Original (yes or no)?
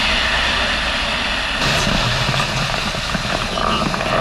yes